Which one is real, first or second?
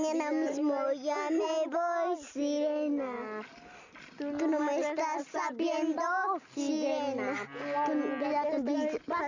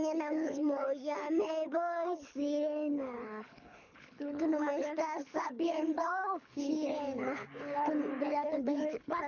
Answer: first